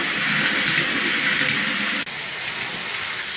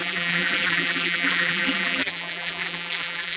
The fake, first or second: second